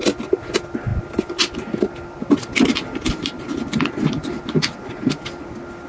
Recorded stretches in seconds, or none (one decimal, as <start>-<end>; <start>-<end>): 0.0-5.9